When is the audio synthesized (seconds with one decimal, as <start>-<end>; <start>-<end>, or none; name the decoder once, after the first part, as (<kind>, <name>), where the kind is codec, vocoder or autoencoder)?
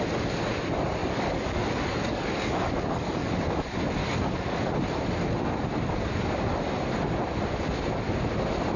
1.0-3.3 (codec, DAC); 4.0-4.6